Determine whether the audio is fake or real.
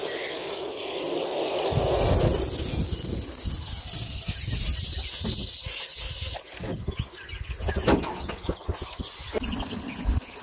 real